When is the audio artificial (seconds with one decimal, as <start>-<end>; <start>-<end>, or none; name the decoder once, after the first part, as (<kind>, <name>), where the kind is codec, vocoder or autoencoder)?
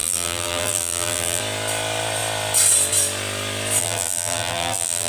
0.0-1.4 (vocoder, BigVGAN v2); 3.8-5.1